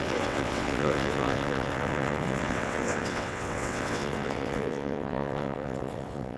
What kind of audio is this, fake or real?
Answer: fake